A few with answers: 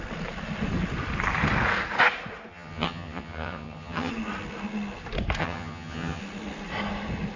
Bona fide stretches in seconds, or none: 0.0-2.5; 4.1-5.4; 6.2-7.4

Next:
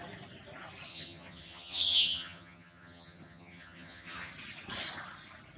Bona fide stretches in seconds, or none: 0.0-0.9; 4.3-5.6